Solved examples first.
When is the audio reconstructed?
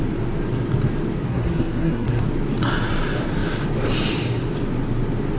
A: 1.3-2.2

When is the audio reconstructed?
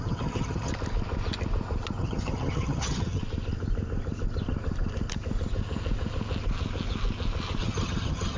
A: 0.0-0.7; 2.0-3.2; 7.6-8.4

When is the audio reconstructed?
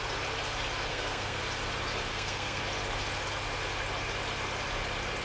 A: 0.9-1.4; 2.1-2.6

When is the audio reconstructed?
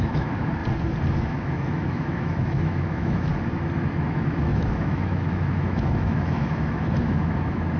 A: 0.0-0.6; 1.2-3.3; 4.0-7.8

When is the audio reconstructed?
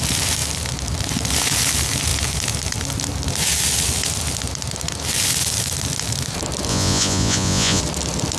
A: 6.7-7.8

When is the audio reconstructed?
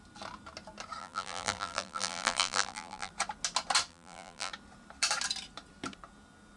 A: 1.0-3.1; 3.9-4.5